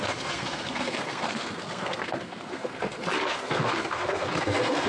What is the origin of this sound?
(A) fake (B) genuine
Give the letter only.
A